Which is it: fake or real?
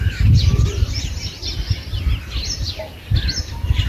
real